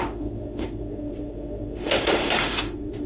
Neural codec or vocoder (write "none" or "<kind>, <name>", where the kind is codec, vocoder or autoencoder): autoencoder, DAC-VAE